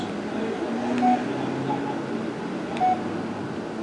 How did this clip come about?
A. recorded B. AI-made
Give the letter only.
A